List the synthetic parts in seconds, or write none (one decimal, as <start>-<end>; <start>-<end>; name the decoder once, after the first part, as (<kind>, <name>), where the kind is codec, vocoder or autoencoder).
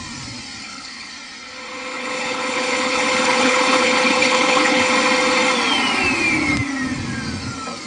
0.6-1.1 (codec, HILCodec); 1.9-4.9